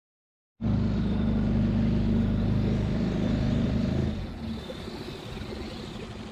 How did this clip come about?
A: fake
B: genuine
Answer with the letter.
B